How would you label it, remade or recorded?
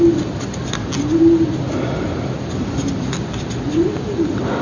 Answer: recorded